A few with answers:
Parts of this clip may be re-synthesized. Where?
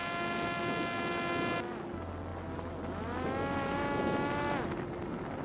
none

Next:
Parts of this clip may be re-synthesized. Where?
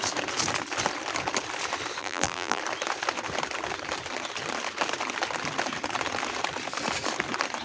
2.0-2.6 (vocoder, BigVGAN v2)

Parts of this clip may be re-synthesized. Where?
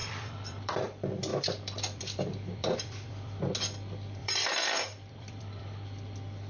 0.0-0.7 (vocoder, BigVGAN v2); 1.3-3.4; 4.2-5.6